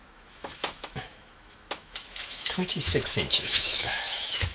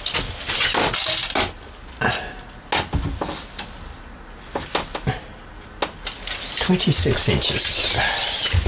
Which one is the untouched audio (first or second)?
second